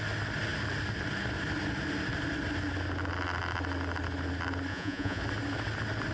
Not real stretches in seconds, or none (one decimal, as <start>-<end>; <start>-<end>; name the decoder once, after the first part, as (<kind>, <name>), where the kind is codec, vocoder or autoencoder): 4.7-5.2 (vocoder, Vocos)